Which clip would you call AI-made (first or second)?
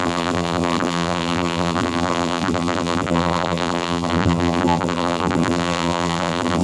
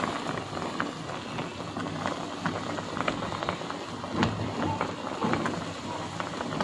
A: first